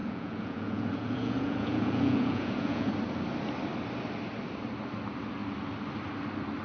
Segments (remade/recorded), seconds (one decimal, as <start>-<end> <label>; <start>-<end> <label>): 0.0-2.9 remade; 2.9-6.6 recorded